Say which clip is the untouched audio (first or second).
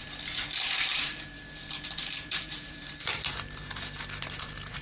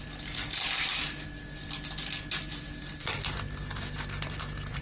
second